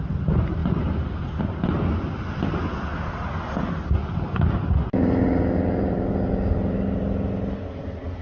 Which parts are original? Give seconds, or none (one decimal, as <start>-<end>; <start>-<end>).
0.0-8.2